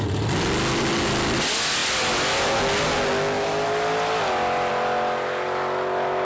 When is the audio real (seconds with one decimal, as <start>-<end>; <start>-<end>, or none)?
0.0-6.2